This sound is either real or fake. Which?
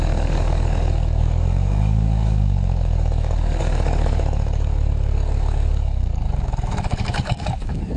fake